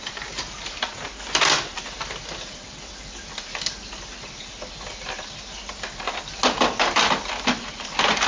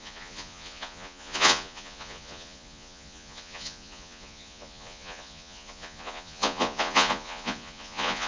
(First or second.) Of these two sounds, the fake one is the second